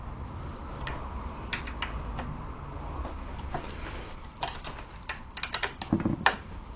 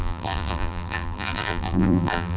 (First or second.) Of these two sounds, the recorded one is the first